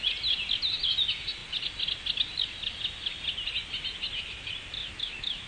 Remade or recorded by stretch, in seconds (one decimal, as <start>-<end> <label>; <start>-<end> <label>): 0.0-4.8 recorded; 4.8-5.5 remade